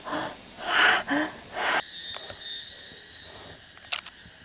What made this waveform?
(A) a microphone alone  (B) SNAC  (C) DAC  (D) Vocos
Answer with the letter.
A